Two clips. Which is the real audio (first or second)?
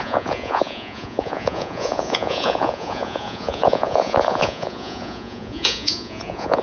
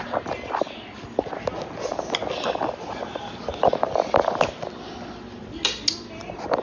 second